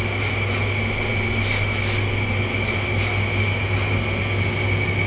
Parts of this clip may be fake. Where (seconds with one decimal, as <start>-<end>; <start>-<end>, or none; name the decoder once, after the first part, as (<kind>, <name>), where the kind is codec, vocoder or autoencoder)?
none